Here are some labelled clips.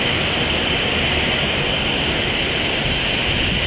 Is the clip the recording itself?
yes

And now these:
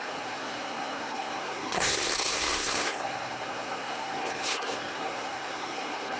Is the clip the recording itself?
no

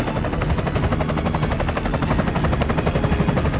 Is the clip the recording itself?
yes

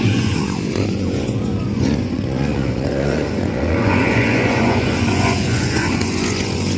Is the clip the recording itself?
no